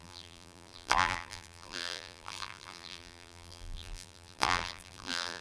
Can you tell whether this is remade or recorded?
remade